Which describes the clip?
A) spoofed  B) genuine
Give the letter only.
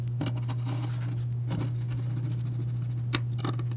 A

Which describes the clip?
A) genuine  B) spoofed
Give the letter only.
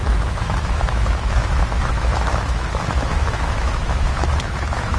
B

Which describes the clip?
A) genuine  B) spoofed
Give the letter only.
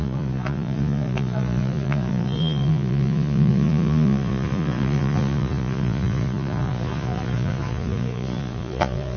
B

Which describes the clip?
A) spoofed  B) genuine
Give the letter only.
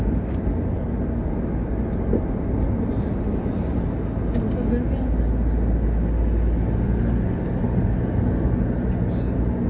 B